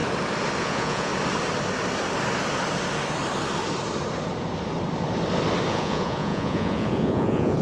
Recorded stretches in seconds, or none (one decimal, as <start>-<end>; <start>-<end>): 0.0-0.6; 1.1-5.7